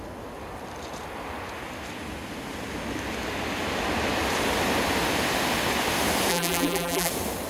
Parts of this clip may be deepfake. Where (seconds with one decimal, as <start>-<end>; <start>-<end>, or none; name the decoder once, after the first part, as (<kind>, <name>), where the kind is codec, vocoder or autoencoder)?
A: 6.3-7.1 (vocoder, BigVGAN v2)